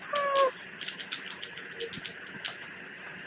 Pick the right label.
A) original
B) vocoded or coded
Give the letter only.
A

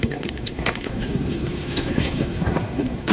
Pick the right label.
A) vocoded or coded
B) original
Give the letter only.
A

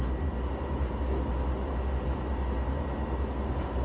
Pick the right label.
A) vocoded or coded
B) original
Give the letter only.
B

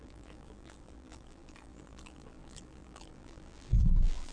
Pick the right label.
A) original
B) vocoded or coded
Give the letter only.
B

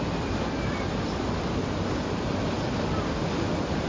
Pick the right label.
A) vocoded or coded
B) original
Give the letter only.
B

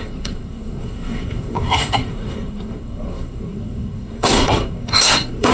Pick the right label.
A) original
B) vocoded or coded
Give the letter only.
B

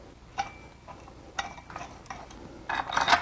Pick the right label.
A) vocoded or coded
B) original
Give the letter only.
B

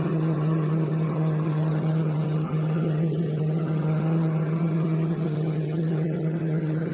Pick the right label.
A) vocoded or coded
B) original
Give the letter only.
A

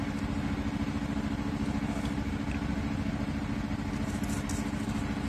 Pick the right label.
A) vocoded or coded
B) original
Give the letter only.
B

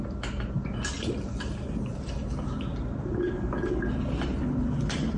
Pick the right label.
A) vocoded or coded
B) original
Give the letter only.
B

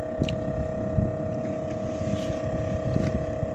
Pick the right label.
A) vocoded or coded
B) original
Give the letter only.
B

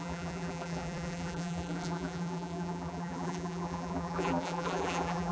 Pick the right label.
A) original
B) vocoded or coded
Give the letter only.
B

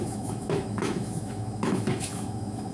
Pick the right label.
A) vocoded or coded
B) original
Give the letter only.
A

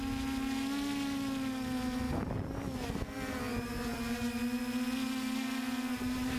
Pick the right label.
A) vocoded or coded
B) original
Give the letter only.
B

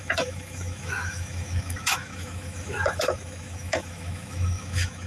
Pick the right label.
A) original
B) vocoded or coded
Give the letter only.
B